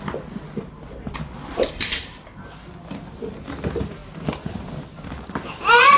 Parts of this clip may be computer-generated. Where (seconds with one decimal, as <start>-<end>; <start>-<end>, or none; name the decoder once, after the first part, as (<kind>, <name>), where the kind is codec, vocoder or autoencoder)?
none